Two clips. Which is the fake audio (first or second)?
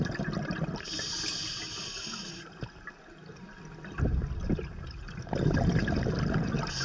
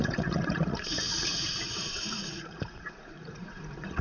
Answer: second